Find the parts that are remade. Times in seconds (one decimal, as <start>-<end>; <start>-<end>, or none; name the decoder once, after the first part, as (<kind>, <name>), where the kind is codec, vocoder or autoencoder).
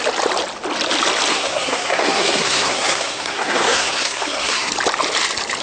1.3-4.7 (codec, SNAC)